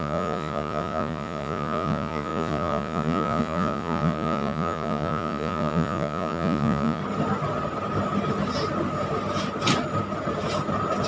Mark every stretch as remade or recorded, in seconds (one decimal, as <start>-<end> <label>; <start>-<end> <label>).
0.0-7.0 remade; 7.0-11.1 recorded